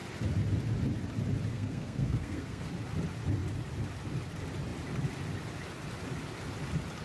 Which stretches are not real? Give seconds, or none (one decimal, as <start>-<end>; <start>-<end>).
1.5-2.7